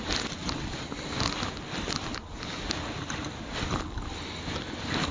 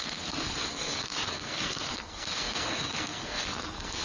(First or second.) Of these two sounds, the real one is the first